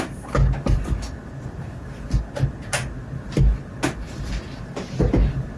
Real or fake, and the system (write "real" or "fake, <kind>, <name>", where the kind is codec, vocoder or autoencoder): real